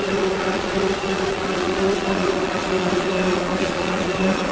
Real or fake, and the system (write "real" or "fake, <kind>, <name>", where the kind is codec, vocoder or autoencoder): fake, vocoder, Vocos